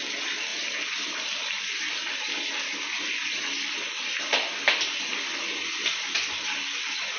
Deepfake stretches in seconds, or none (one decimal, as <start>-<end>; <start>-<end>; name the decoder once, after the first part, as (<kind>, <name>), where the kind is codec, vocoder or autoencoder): none